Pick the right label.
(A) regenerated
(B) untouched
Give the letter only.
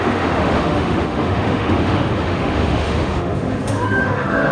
A